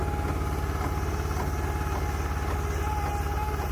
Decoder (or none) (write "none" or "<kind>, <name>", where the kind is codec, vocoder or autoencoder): none